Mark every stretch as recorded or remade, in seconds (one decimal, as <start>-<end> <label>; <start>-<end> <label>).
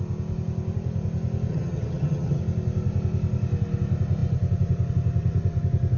0.0-1.5 recorded; 1.5-2.4 remade; 2.4-6.0 recorded